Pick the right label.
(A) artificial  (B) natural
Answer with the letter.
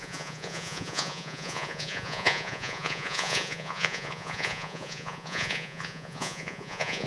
A